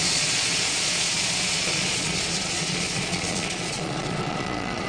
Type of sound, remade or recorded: remade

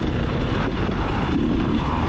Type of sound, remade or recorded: remade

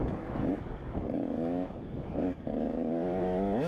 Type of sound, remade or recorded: remade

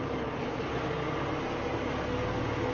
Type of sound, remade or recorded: recorded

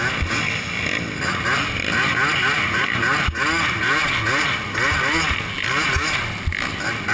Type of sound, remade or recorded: recorded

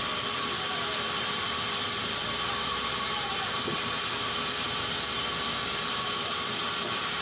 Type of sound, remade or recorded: remade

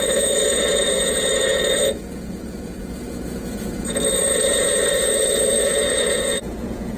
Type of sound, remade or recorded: remade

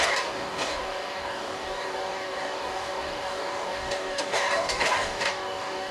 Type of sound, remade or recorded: remade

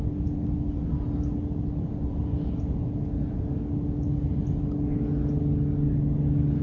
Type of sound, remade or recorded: recorded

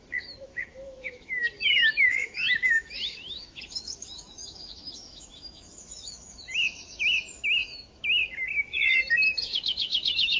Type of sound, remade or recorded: remade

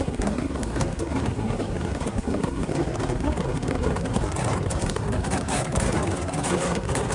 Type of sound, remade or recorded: remade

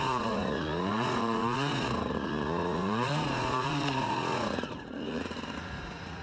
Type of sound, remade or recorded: remade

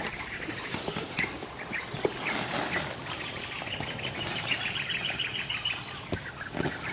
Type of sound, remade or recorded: recorded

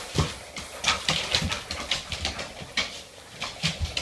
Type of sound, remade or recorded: recorded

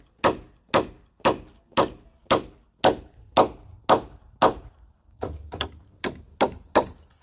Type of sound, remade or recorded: recorded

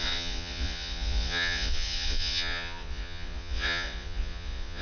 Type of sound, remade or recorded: remade